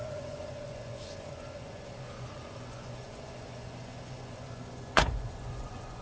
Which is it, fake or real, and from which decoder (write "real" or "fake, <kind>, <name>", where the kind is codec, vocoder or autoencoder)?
fake, vocoder, Vocos